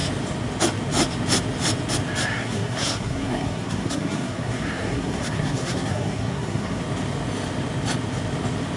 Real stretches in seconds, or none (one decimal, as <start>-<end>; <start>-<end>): 0.0-2.2; 6.8-8.8